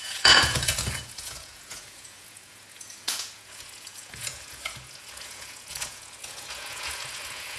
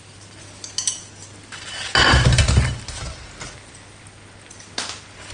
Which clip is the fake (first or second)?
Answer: first